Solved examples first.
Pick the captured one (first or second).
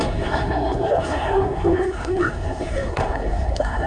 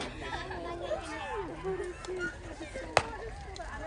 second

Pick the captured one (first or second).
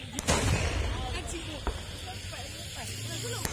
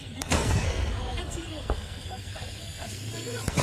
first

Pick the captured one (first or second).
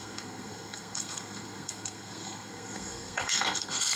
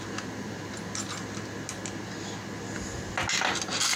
second